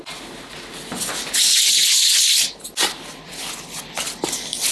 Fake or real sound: real